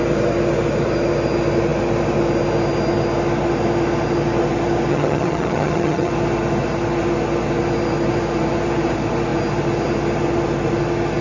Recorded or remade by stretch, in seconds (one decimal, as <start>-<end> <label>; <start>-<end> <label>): 0.0-4.9 recorded; 4.9-6.1 remade; 6.1-11.2 recorded